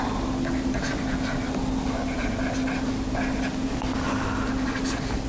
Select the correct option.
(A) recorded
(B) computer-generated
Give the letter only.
A